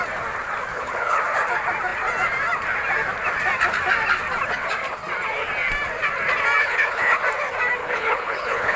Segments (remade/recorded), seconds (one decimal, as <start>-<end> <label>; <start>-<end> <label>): 0.0-0.7 recorded; 0.7-1.2 remade; 1.2-6.6 recorded; 6.6-7.2 remade; 7.2-7.8 recorded; 7.8-8.8 remade